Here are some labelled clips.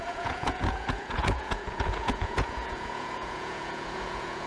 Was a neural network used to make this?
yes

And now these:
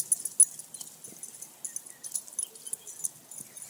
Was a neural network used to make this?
no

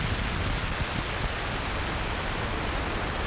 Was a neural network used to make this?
no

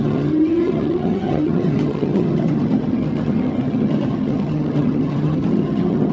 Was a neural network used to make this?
yes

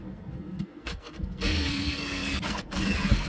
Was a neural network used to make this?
yes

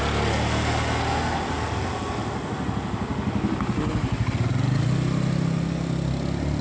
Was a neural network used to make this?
no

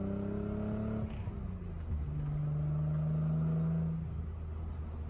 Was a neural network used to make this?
no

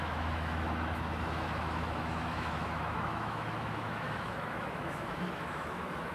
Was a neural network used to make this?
yes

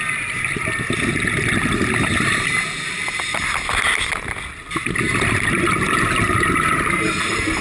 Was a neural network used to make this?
no